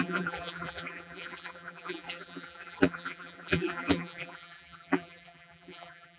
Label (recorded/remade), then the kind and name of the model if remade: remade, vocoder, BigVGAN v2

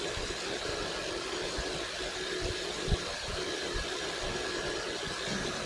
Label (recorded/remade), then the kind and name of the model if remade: recorded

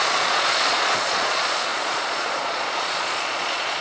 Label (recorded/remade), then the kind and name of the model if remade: remade, vocoder, Vocos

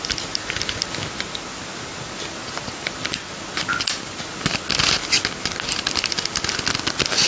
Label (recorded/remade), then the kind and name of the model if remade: recorded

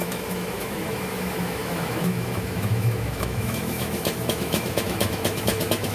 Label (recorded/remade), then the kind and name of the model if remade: remade, autoencoder, DAC-VAE